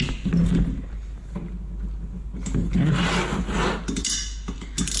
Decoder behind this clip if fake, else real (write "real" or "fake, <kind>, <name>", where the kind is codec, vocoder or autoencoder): real